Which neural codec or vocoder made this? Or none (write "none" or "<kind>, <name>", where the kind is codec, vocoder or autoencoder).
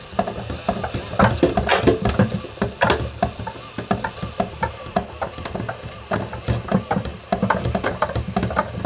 none